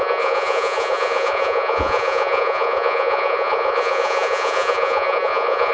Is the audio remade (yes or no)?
yes